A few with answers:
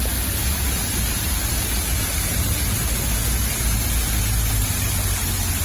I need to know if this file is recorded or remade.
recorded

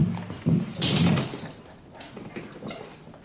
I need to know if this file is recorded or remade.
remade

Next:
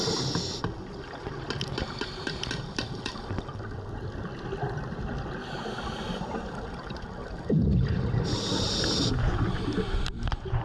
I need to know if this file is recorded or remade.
recorded